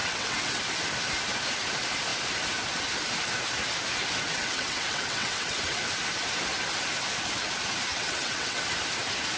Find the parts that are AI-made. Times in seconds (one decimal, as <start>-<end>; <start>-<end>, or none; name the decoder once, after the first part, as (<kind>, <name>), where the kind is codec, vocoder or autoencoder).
0.0-0.6 (vocoder, WaveNeXt); 4.3-5.8; 7.9-8.6